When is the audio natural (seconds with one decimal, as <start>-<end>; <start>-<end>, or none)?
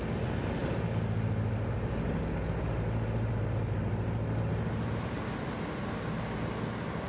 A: 0.0-7.1